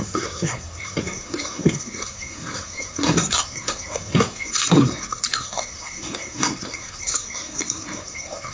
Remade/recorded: remade